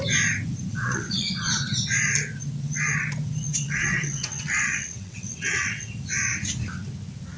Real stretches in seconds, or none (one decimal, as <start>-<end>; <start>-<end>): 0.0-0.7; 1.3-3.5; 5.9-7.4